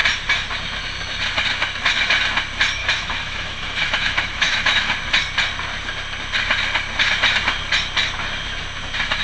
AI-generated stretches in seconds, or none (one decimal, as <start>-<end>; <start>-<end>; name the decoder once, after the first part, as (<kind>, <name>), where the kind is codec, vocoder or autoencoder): 2.8-4.9 (autoencoder, DAC-VAE)